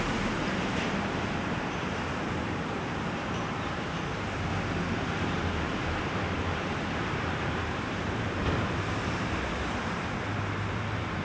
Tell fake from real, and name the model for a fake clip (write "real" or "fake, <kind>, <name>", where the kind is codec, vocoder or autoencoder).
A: fake, vocoder, BigVGAN v2